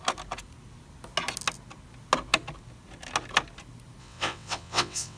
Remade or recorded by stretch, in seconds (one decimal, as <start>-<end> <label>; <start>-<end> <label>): 0.0-4.0 recorded; 4.0-5.2 remade